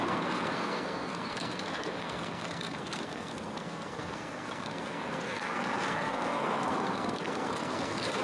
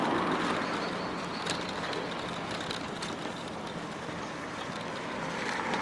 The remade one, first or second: first